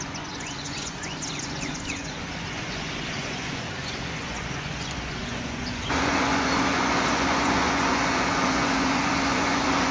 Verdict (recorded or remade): remade